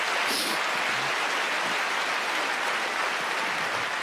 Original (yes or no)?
yes